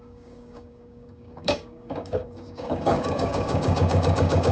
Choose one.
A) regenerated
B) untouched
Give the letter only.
A